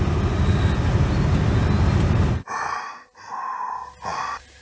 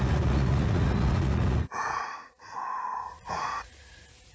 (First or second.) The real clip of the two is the first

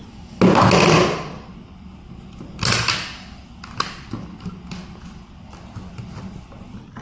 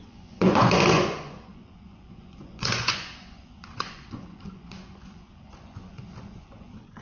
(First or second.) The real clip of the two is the first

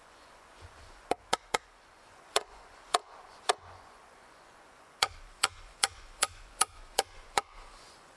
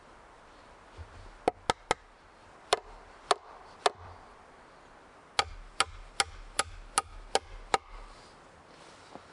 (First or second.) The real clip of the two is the second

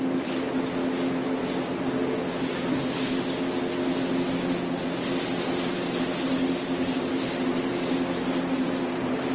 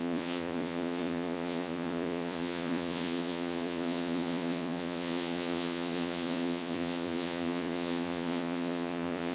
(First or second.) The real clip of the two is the first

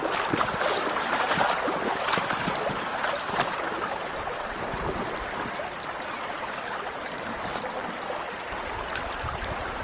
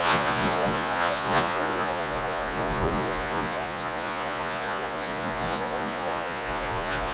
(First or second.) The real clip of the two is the first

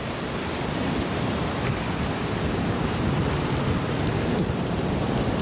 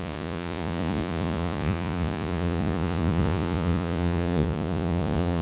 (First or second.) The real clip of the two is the first